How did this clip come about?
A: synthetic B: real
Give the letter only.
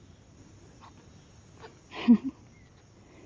B